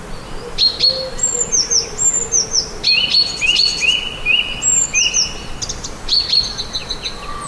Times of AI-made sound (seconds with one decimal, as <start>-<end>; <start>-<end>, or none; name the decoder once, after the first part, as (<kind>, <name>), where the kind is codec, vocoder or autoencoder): none